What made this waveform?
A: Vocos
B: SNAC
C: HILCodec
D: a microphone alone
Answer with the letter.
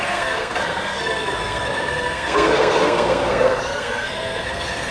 B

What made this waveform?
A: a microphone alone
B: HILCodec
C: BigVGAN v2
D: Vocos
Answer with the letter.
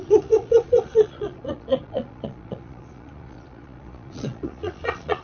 D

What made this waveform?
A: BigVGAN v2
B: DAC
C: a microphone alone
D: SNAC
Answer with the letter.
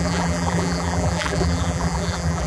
A